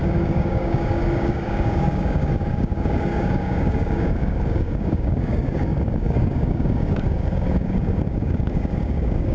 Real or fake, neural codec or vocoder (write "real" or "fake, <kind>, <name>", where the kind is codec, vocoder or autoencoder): fake, codec, DAC